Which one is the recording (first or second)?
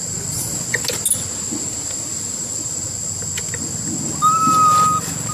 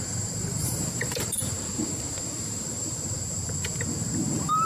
first